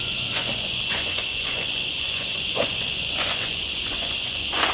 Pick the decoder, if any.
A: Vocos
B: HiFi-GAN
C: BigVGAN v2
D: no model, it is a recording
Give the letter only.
A